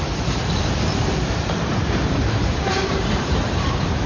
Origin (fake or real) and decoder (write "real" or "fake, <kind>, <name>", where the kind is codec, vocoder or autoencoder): fake, vocoder, BigVGAN v2